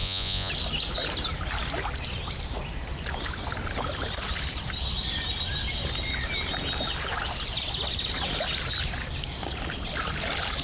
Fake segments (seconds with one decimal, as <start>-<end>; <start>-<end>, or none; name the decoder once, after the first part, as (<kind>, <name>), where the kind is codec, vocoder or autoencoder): 0.0-0.5 (vocoder, Vocos)